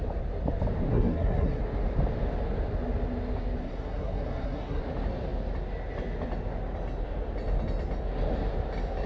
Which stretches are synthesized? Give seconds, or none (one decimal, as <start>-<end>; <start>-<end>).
0.9-1.6; 3.6-4.8